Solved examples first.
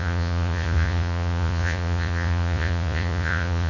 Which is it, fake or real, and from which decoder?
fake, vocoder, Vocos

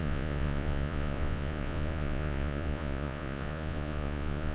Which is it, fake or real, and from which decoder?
fake, vocoder, Vocos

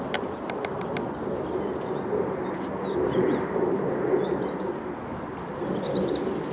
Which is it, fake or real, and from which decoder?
real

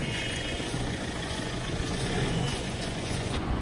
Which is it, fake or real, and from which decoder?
fake, vocoder, Vocos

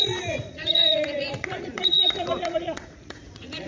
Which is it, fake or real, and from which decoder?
fake, vocoder, Vocos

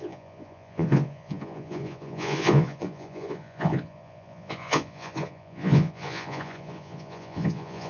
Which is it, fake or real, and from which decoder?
fake, vocoder, Vocos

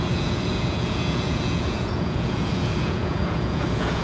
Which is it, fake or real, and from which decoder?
fake, vocoder, Vocos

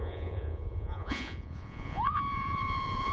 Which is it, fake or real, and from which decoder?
fake, vocoder, Vocos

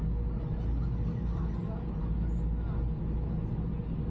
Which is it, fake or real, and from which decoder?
real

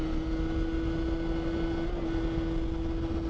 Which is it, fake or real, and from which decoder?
real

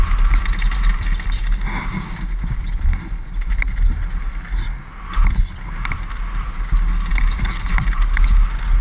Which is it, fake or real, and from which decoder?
real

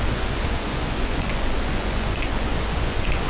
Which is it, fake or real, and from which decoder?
fake, vocoder, Vocos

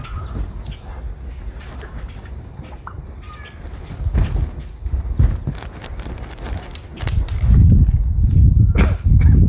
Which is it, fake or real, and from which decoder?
real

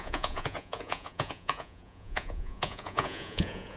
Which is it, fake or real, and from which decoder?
fake, vocoder, Vocos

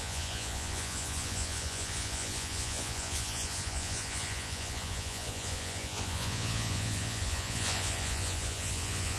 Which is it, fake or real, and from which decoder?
fake, vocoder, Vocos